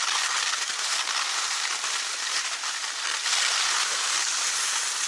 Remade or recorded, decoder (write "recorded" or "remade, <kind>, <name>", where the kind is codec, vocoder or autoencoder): recorded